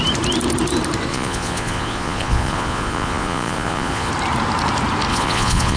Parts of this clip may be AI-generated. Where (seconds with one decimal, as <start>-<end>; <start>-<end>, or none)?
1.1-4.1; 5.1-5.8